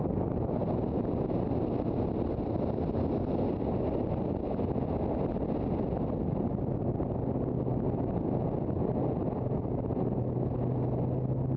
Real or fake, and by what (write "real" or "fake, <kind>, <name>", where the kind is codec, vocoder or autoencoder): real